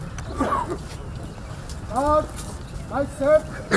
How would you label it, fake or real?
real